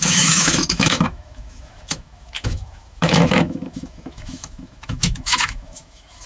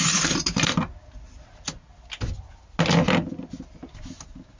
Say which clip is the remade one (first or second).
first